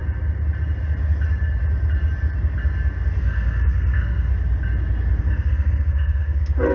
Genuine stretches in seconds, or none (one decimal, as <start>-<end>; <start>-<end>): 0.0-3.2; 4.3-5.2